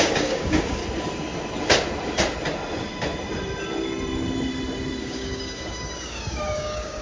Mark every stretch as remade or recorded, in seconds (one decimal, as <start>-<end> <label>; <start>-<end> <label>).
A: 0.0-0.8 remade; 0.8-5.0 recorded; 5.0-7.0 remade